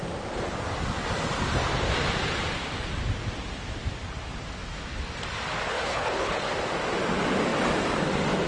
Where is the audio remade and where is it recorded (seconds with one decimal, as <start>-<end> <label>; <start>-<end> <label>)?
0.0-5.7 recorded; 5.7-6.5 remade; 6.5-8.5 recorded